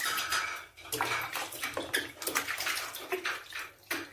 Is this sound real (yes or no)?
yes